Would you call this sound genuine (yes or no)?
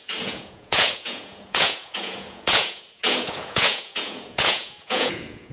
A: no